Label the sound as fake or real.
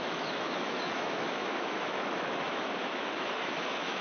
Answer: fake